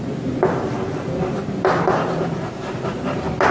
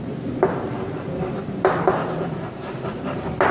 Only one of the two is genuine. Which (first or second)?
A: first